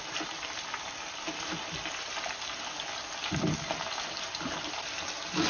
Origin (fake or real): real